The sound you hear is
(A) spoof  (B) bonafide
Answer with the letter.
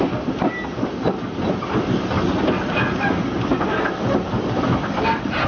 B